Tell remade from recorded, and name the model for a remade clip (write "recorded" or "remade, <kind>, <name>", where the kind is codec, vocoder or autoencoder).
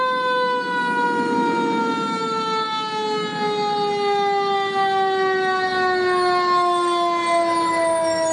recorded